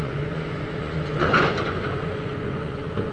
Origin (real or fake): fake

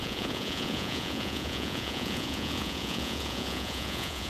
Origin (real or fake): fake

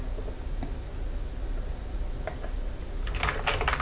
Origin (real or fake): real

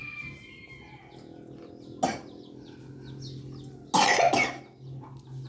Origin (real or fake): real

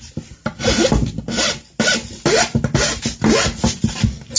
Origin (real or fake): real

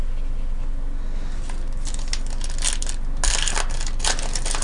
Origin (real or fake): real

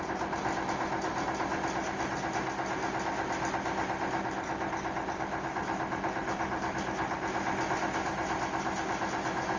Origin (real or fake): real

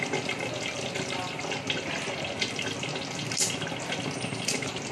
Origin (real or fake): real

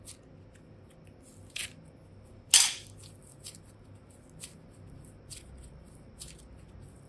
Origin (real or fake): real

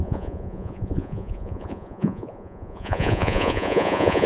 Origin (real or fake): fake